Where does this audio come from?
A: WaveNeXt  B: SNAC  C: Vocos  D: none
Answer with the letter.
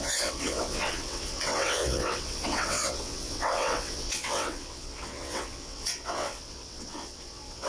A